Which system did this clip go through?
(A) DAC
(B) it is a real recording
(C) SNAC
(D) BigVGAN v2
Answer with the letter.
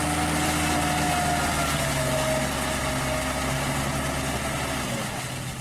B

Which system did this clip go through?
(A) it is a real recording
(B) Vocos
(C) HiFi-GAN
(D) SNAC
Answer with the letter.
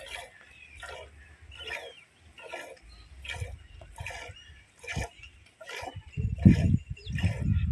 A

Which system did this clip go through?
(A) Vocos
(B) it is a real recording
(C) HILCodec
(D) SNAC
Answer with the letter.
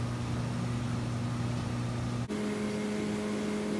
B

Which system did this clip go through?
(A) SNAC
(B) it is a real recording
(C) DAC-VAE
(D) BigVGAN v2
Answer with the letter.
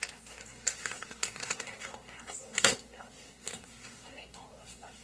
A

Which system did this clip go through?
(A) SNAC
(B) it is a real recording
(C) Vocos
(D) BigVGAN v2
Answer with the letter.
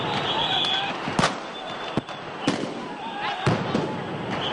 B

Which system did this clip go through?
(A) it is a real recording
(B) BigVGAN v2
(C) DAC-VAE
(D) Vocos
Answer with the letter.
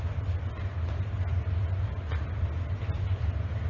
A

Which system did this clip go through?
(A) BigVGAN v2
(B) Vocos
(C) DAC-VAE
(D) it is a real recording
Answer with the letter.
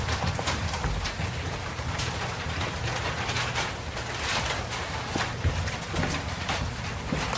D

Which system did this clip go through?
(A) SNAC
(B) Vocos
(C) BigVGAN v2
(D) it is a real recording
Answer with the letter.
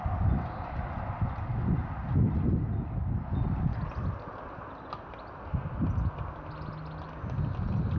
D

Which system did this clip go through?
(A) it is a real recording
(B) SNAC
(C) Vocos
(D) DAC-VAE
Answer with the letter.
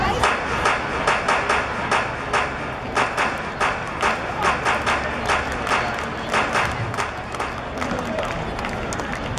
A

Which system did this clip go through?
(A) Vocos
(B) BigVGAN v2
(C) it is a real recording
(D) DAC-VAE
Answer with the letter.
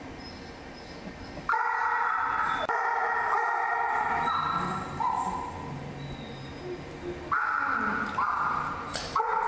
C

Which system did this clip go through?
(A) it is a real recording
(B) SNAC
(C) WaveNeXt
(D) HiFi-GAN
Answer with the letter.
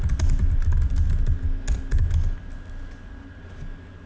A